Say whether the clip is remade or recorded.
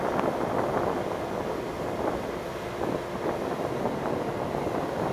recorded